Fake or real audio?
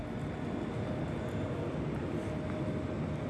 real